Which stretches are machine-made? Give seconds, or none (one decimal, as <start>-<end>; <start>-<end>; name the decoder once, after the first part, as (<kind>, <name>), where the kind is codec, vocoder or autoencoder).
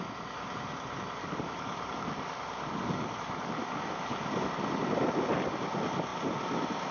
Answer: 1.2-4.5 (codec, DAC)